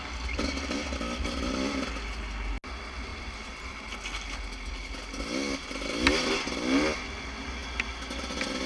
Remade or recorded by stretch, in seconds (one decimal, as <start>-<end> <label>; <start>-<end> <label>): 0.0-3.1 recorded; 3.1-3.8 remade; 3.8-8.7 recorded